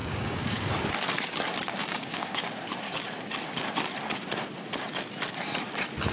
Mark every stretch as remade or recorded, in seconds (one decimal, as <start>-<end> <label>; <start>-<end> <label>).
0.0-0.7 remade; 0.7-1.8 recorded; 1.8-2.4 remade; 2.4-6.1 recorded

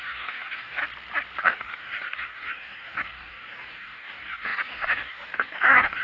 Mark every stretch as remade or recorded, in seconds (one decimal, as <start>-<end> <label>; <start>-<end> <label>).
0.0-0.8 remade; 0.8-1.4 recorded; 1.4-6.0 remade